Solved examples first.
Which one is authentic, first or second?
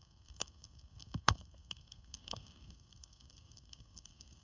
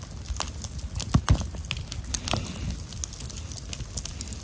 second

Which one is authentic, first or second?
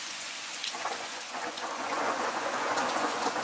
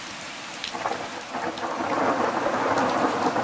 second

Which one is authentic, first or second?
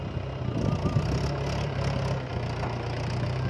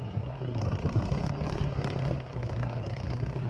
first